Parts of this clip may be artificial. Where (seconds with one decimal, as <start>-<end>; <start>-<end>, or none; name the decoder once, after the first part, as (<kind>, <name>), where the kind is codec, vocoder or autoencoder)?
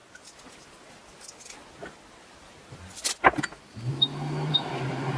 none